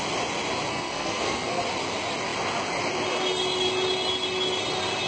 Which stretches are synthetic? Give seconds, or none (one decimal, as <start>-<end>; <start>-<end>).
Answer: 0.7-1.6